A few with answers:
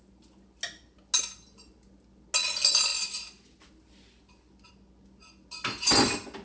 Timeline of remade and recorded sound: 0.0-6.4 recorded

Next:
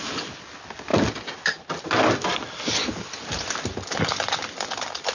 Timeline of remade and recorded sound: 0.0-5.1 recorded